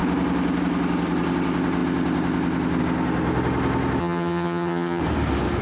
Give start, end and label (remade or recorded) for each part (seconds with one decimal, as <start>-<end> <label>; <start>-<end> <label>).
0.0-4.0 recorded; 4.0-5.0 remade; 5.0-5.6 recorded